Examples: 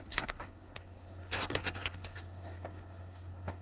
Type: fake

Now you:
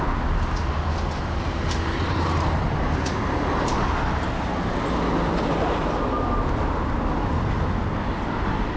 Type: real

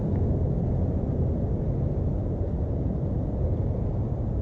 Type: real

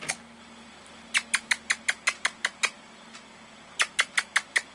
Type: real